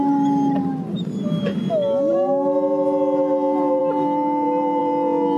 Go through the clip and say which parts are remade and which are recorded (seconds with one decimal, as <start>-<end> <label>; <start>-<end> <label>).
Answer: 0.0-5.4 recorded